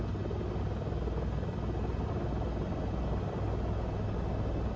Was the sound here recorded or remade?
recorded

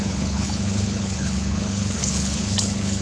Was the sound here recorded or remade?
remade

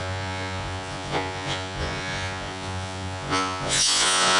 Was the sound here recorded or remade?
remade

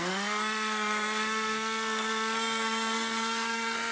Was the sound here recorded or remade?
remade